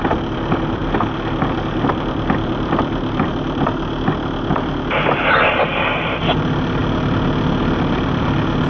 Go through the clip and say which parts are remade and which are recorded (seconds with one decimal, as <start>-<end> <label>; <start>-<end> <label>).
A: 0.0-0.8 remade; 0.8-1.9 recorded; 1.9-6.8 remade; 6.8-7.6 recorded; 7.6-8.7 remade